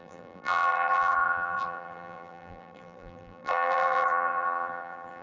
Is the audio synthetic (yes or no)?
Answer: yes